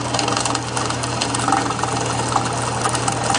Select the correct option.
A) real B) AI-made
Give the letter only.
A